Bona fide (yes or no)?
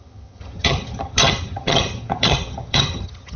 no